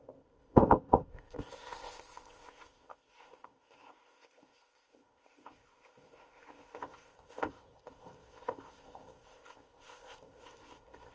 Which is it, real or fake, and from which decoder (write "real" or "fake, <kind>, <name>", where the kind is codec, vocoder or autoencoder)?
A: fake, codec, ZipCodec